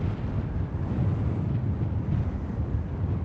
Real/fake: real